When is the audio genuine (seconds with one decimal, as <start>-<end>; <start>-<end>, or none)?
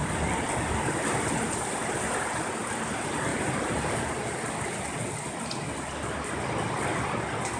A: 0.0-3.3; 4.5-7.6